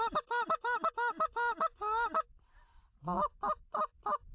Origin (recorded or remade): recorded